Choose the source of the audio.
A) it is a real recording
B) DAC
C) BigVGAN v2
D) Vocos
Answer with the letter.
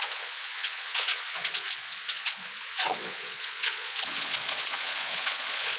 D